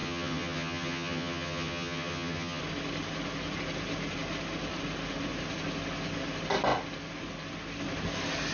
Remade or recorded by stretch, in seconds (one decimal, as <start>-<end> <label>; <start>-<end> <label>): 0.0-2.6 remade; 2.6-8.5 recorded